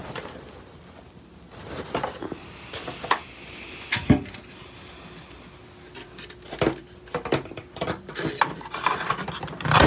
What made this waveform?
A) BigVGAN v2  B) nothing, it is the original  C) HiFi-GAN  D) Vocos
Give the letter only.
B